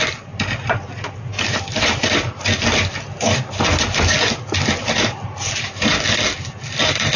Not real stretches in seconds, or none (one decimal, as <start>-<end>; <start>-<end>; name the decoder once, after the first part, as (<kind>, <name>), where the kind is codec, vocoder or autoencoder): 1.3-2.4 (vocoder, BigVGAN v2)